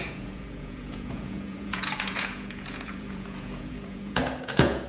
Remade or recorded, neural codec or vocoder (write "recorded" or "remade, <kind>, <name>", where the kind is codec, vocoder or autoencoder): remade, vocoder, Vocos